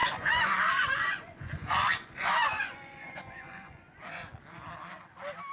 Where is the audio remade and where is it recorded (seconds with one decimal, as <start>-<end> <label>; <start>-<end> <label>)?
0.0-4.3 remade; 4.3-5.5 recorded